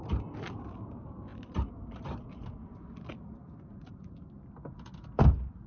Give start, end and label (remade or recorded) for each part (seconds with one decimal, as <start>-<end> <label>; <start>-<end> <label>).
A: 0.0-5.7 remade